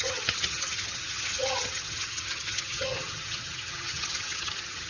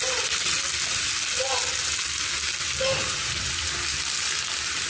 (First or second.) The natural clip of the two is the second